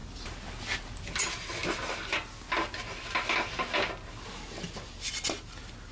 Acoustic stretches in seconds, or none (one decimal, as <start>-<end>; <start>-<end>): 0.0-5.9